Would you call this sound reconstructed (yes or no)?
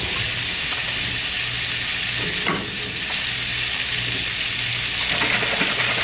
no